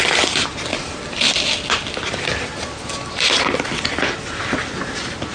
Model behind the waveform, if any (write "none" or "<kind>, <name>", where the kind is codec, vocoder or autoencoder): none